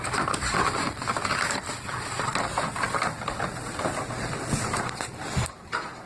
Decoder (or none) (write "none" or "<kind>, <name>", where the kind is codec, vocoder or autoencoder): vocoder, BigVGAN v2